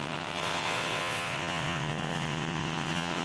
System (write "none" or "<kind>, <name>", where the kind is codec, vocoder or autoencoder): vocoder, WaveNeXt